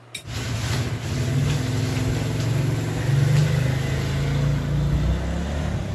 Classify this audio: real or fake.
real